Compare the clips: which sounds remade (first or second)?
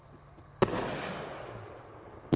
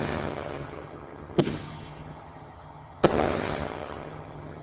second